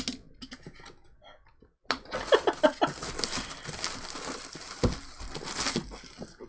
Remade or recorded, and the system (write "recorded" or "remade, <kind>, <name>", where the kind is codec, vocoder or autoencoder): recorded